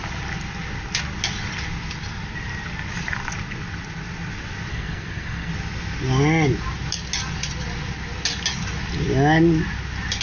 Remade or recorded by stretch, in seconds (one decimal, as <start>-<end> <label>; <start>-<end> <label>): 0.0-4.7 recorded; 4.7-5.5 remade; 5.5-10.2 recorded